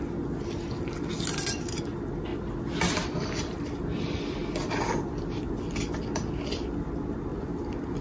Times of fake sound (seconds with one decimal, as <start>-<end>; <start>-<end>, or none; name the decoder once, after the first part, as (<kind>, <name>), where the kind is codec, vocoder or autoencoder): 2.3-5.5 (vocoder, BigVGAN v2); 7.3-8.0